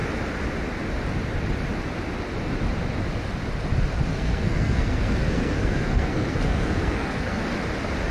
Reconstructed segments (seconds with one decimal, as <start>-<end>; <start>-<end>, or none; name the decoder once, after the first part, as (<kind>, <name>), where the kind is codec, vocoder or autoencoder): 4.1-7.4 (codec, SNAC)